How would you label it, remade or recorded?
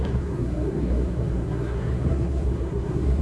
remade